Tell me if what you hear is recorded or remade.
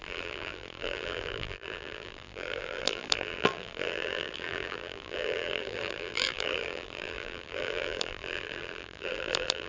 remade